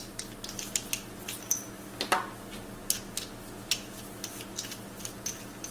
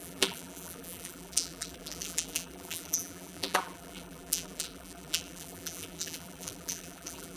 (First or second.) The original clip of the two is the first